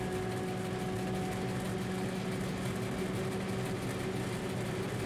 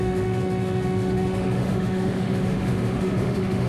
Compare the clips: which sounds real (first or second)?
first